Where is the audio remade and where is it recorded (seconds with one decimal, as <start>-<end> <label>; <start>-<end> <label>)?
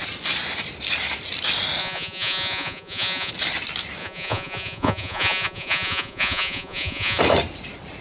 0.0-1.8 recorded; 1.8-3.3 remade; 3.3-4.0 recorded; 4.0-7.2 remade; 7.2-8.0 recorded